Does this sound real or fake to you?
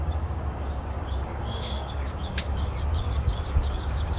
fake